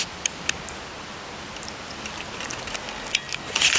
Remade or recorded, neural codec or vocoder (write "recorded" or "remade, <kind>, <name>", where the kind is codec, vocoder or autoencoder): recorded